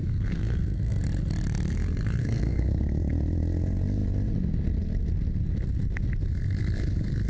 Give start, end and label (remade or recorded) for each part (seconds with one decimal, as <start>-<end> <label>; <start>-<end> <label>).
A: 0.0-1.0 remade; 1.0-2.2 recorded; 2.2-2.8 remade; 2.8-7.3 recorded